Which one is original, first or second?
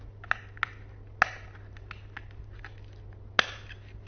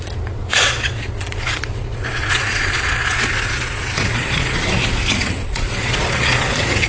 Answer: first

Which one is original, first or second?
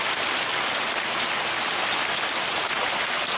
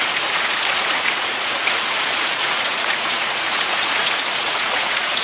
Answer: first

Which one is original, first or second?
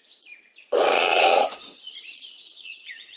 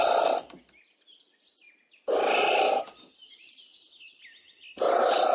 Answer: second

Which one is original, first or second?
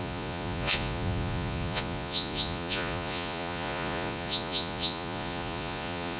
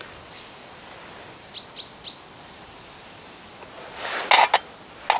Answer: second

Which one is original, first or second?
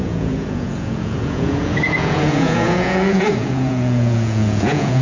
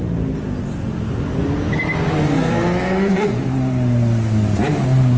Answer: second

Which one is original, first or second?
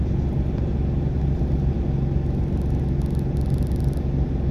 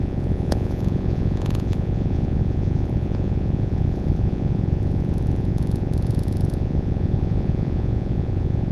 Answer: first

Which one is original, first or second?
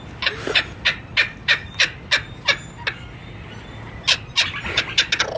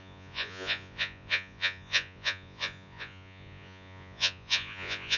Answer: first